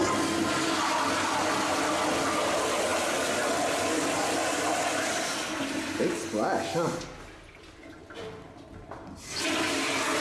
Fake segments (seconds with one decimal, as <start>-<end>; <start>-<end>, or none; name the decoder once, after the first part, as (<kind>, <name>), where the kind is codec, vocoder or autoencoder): none